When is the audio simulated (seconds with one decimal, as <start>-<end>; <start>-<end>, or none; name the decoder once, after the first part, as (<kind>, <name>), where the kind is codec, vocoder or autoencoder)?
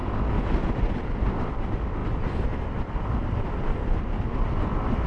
1.4-5.1 (vocoder, BigVGAN v2)